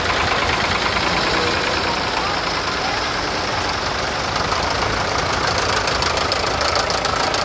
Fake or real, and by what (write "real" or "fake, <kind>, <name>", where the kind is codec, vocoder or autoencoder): real